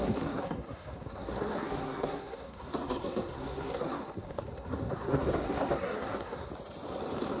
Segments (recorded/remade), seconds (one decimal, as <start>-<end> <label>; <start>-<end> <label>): 0.0-6.5 remade; 6.5-7.4 recorded